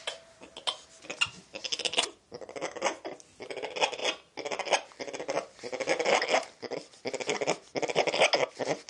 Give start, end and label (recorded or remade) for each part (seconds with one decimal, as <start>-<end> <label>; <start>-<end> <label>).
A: 0.0-8.9 recorded